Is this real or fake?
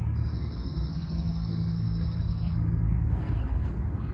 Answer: fake